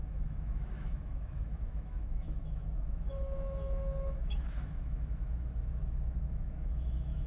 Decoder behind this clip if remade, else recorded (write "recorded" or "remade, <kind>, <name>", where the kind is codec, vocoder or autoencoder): remade, autoencoder, DAC-VAE